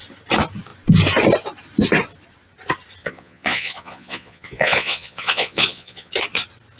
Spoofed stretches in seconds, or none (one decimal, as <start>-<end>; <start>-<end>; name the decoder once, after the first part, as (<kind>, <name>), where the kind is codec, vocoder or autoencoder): 3.0-6.1 (vocoder, Vocos)